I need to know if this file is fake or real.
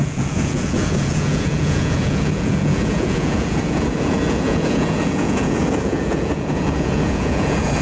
fake